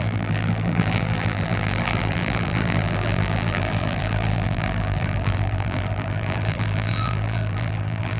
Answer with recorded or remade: remade